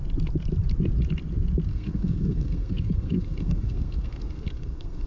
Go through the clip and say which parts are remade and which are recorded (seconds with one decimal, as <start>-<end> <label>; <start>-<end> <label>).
0.0-1.7 recorded; 1.7-5.1 remade